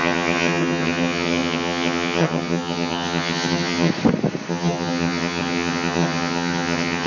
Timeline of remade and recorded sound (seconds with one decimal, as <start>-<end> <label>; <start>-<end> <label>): 0.0-3.9 remade; 3.9-4.5 recorded; 4.5-7.1 remade